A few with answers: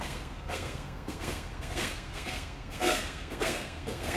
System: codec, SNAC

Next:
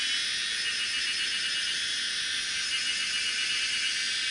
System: none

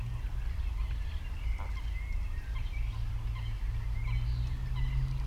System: none